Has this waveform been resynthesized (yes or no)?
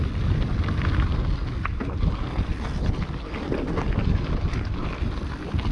no